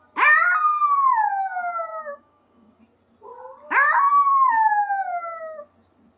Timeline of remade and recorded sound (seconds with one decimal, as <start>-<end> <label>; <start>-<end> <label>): 0.0-1.9 recorded; 1.9-2.8 remade; 2.8-4.1 recorded; 4.1-4.7 remade; 4.7-6.2 recorded